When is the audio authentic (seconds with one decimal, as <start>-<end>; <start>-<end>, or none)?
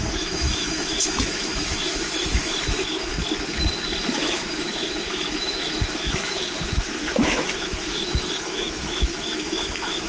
3.1-4.1